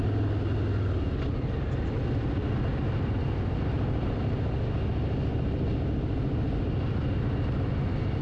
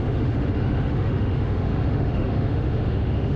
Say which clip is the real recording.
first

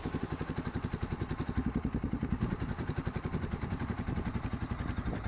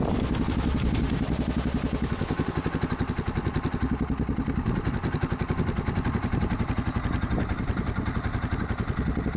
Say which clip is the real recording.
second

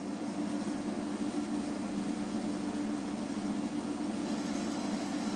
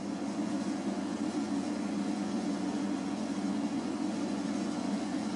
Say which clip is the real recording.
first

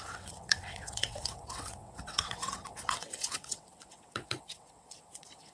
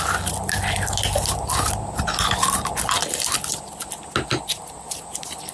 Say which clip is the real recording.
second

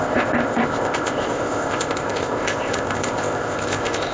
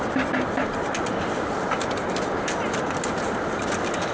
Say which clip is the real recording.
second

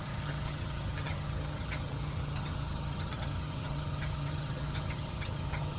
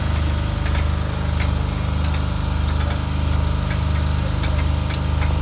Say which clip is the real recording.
second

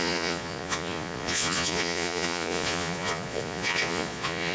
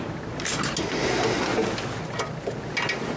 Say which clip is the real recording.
second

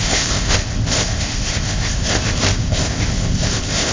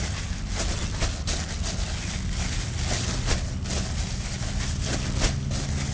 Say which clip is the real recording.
second